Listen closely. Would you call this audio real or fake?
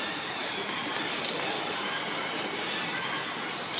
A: real